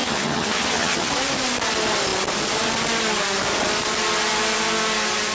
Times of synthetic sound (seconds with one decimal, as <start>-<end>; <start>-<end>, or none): 0.0-1.1

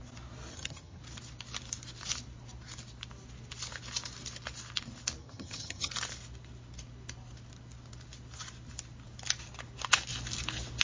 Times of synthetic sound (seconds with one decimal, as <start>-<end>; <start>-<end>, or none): 0.5-1.0; 5.2-5.9